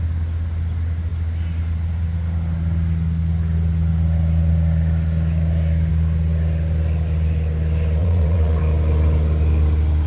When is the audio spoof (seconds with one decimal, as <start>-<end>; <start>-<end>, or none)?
8.0-8.6